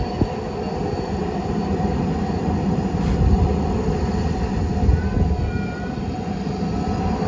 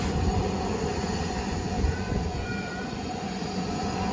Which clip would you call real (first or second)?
first